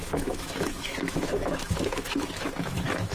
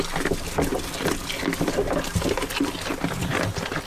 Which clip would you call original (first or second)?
second